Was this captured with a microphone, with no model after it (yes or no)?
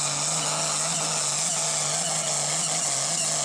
yes